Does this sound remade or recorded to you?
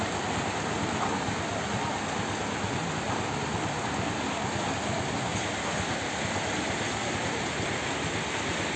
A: recorded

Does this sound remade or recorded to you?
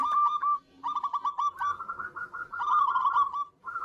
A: remade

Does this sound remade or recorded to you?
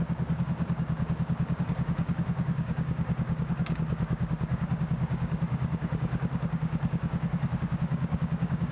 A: remade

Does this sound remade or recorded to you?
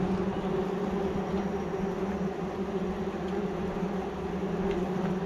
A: recorded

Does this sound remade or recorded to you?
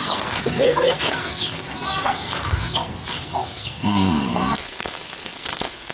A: remade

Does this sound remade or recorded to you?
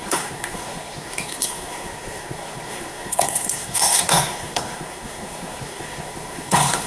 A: remade